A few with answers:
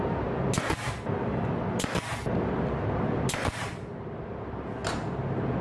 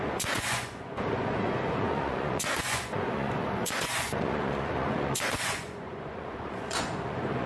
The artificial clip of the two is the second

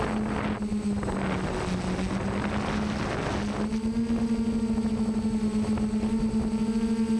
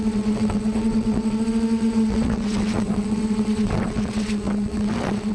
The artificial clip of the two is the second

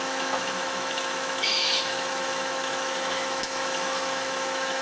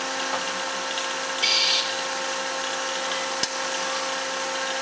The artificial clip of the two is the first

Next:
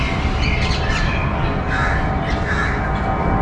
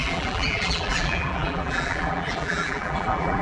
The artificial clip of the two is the second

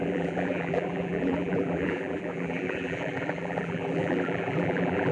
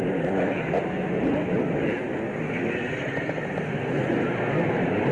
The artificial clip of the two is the first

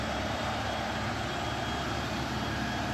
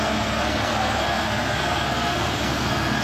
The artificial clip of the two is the second